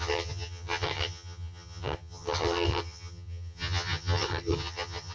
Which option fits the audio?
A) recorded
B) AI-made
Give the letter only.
B